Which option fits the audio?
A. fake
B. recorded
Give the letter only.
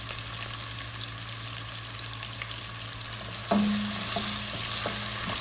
B